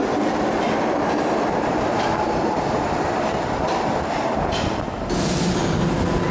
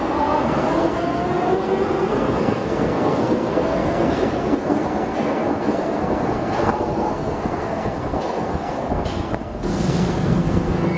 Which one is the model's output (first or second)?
second